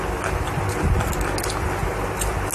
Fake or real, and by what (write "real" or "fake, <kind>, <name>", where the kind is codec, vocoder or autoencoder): real